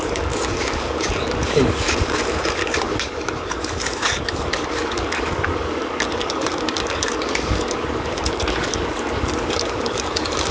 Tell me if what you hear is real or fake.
fake